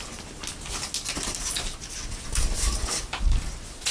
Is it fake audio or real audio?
real